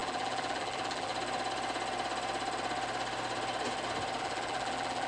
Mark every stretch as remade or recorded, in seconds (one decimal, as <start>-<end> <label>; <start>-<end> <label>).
0.0-1.1 remade; 1.1-4.2 recorded; 4.2-5.1 remade